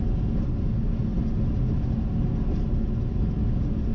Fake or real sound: real